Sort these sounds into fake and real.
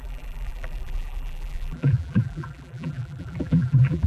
fake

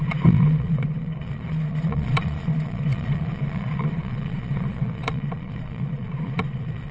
fake